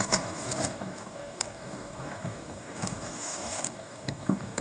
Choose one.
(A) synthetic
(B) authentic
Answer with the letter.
A